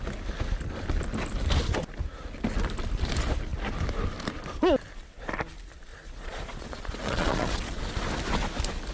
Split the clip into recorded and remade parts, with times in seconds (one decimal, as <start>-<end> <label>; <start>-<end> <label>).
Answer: 0.0-5.9 recorded; 5.9-7.8 remade; 7.8-8.9 recorded